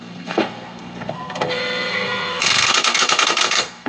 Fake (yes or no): yes